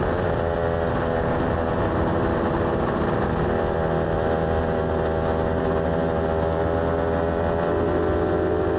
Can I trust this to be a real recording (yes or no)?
yes